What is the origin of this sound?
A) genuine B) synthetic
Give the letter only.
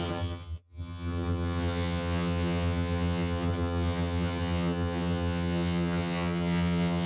B